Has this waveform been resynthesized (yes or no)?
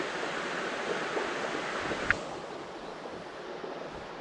no